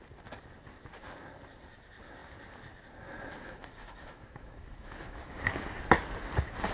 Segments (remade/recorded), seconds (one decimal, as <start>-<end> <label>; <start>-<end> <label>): 0.0-3.4 recorded; 3.4-5.3 remade; 5.3-6.7 recorded